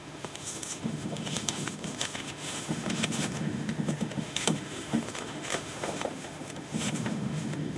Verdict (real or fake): fake